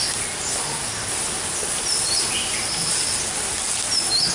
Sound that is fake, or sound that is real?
real